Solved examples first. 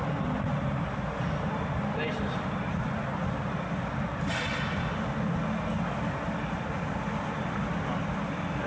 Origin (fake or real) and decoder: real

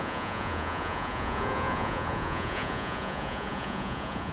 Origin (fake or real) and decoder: fake, vocoder, Vocos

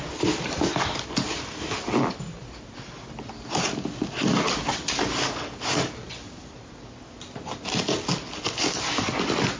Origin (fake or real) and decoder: real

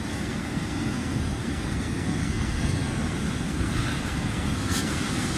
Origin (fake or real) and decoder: fake, codec, SNAC